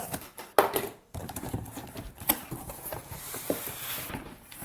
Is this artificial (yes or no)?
yes